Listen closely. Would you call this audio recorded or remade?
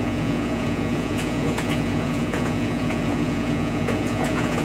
remade